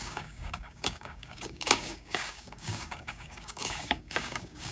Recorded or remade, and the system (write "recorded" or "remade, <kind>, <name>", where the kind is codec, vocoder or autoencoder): remade, codec, DAC